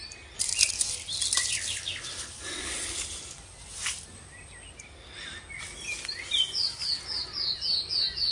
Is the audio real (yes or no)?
yes